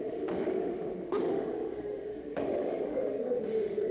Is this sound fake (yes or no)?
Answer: yes